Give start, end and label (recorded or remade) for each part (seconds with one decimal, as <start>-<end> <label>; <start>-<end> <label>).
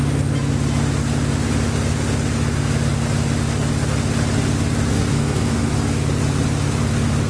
0.0-4.9 recorded; 4.9-5.7 remade; 5.7-7.3 recorded